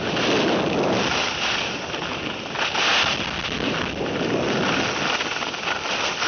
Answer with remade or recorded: recorded